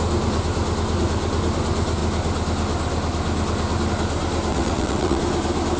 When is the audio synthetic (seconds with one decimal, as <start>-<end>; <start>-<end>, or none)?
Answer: 4.5-5.2